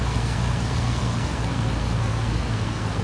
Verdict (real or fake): fake